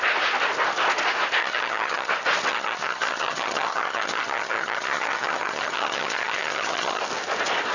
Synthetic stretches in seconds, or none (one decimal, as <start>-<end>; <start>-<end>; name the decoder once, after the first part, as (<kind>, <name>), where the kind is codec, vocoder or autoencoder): 1.4-2.1 (vocoder, HiFi-GAN); 2.5-7.0